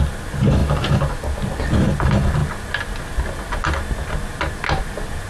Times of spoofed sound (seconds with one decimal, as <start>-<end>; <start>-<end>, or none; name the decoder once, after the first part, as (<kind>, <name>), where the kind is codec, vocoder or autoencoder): none